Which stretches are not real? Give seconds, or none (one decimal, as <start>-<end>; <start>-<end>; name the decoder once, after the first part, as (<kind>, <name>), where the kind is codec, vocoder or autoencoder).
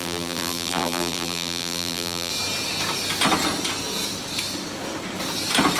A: 0.0-2.3 (vocoder, BigVGAN v2)